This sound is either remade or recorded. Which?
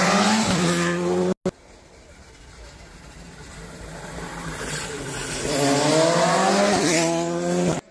recorded